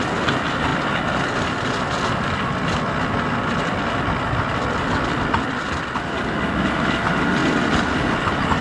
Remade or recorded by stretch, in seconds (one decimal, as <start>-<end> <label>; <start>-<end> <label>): 0.0-8.6 recorded